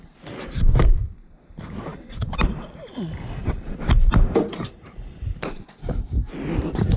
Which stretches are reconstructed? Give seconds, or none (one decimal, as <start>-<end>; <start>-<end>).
1.9-2.7; 3.4-4.8